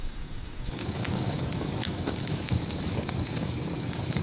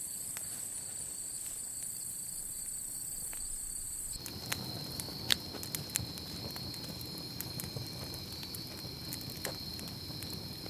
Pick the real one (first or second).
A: second